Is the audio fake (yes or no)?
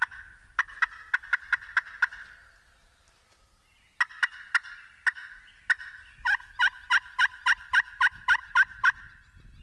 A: no